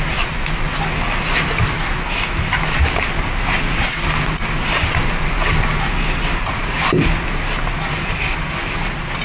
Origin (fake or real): real